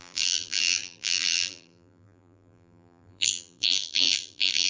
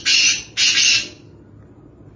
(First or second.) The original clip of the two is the second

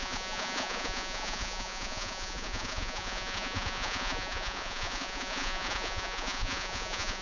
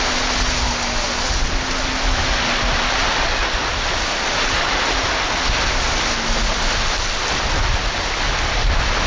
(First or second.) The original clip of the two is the second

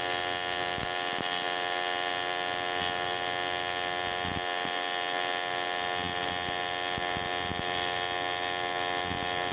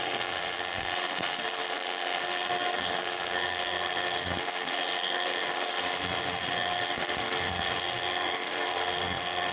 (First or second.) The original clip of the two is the first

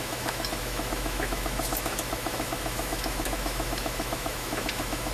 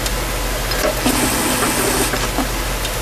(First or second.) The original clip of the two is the second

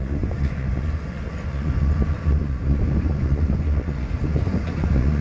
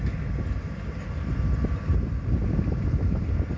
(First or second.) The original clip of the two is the second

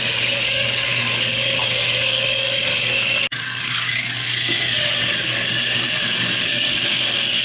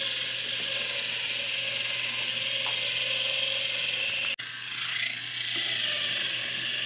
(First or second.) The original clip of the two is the second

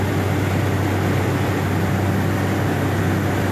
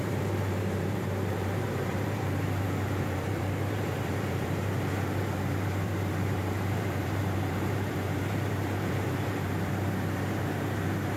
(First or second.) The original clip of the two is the first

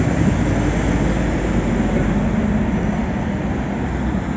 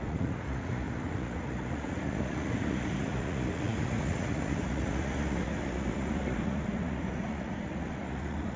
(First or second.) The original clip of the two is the first